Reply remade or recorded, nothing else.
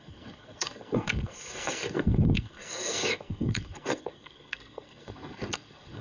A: remade